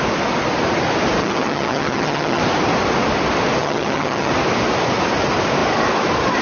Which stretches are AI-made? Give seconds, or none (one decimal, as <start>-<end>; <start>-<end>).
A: 1.2-2.4; 3.6-4.3